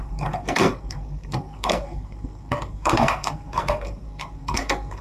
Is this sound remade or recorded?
remade